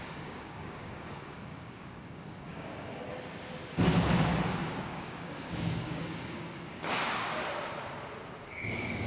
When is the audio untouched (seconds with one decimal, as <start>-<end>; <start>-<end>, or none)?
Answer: 3.0-4.6; 7.4-8.4

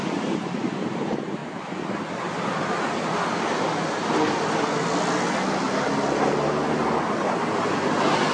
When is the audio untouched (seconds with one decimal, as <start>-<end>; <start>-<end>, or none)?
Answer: 0.0-8.3

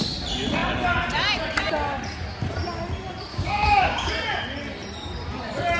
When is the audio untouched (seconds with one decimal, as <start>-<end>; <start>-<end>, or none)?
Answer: 0.0-3.3; 4.1-5.8

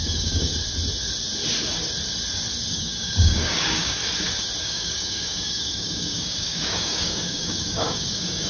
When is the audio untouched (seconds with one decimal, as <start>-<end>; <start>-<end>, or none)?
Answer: 0.5-2.7; 4.0-4.6